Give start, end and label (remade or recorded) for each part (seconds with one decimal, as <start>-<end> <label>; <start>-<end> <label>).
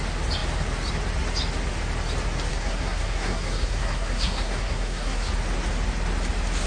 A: 0.0-2.5 recorded; 2.5-5.3 remade; 5.3-6.7 recorded